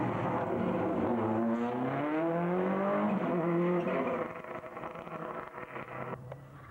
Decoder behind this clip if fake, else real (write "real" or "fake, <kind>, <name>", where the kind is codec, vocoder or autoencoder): real